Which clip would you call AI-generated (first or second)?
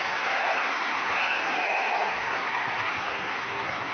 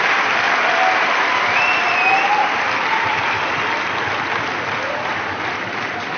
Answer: first